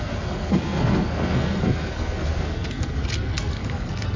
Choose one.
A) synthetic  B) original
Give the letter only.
A